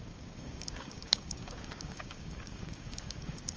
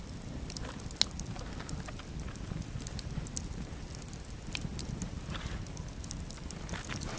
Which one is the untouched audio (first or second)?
second